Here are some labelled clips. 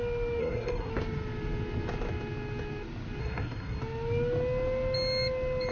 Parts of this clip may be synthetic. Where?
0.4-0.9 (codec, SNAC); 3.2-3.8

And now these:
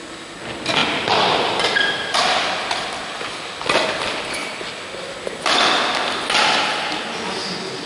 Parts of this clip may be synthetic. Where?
none

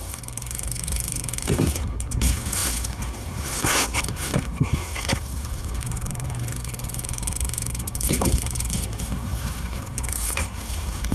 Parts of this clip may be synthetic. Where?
0.0-11.1 (codec, SNAC)

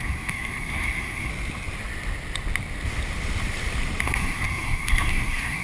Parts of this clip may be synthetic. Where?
0.0-1.3 (codec, SNAC); 4.0-5.6

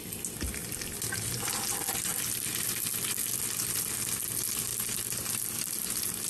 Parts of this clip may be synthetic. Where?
none

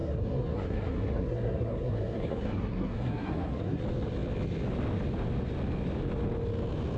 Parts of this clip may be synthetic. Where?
0.0-3.8 (codec, SNAC)